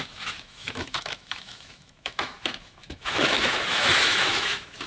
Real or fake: fake